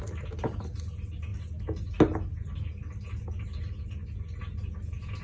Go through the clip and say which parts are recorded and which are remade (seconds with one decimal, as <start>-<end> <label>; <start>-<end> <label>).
0.0-5.2 recorded